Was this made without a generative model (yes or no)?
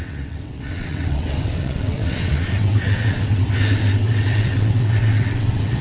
no